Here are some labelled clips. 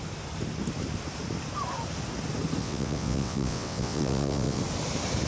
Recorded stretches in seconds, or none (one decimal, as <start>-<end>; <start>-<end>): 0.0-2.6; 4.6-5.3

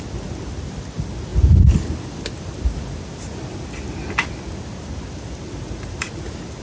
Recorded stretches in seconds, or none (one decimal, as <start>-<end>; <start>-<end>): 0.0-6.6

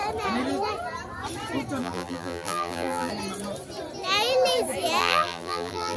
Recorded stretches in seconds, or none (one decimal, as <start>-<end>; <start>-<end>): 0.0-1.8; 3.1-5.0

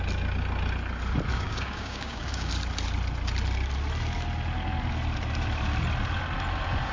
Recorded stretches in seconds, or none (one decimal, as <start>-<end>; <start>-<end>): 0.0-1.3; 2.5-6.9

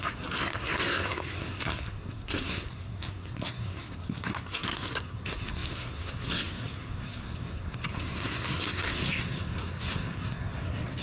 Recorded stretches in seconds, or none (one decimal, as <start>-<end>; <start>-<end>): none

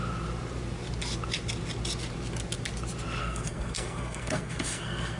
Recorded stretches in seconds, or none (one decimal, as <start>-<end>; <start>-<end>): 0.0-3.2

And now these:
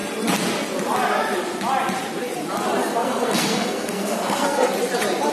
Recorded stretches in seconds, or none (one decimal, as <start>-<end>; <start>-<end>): 0.0-2.8; 4.7-5.3